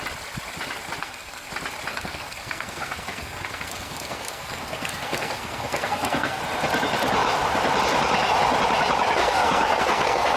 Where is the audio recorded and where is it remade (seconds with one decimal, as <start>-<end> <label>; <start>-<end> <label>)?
0.0-1.0 recorded; 1.0-1.5 remade; 1.5-1.9 recorded; 1.9-6.4 remade; 6.4-9.2 recorded; 9.2-10.4 remade

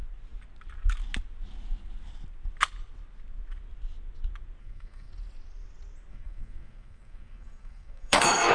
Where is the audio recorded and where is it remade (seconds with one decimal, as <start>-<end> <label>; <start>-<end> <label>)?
0.0-4.6 recorded; 4.6-5.1 remade; 5.1-6.1 recorded; 6.1-8.5 remade

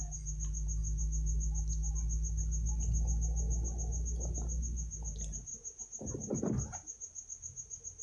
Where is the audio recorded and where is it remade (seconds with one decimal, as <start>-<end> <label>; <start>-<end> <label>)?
0.0-8.0 recorded

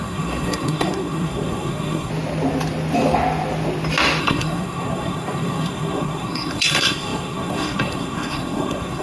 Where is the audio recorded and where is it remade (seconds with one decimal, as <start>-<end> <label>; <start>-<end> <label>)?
0.0-2.1 remade; 2.1-4.2 recorded; 4.2-9.0 remade